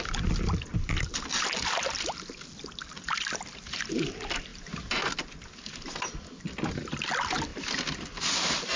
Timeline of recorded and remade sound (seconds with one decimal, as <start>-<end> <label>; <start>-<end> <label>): 0.0-0.7 remade; 0.7-2.9 recorded; 2.9-4.5 remade; 4.5-6.2 recorded; 6.2-8.8 remade